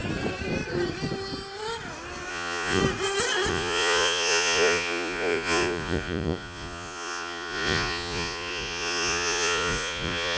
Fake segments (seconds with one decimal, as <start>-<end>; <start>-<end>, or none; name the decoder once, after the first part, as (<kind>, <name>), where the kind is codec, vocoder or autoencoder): 2.3-2.8 (vocoder, Vocos); 3.5-10.4